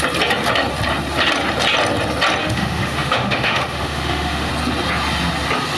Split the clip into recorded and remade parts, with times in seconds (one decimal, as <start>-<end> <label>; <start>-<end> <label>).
0.0-2.4 recorded; 2.4-4.5 remade; 4.5-5.8 recorded